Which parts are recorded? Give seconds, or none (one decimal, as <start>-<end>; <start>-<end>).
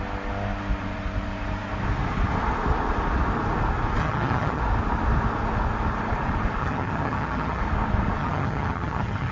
0.0-4.0; 4.6-6.6; 7.6-8.2